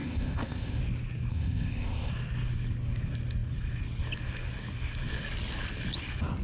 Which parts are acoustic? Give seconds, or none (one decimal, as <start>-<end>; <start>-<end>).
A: 0.8-1.3; 2.1-6.4